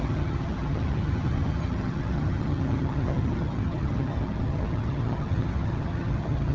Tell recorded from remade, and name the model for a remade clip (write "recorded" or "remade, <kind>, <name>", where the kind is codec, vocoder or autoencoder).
remade, vocoder, HiFi-GAN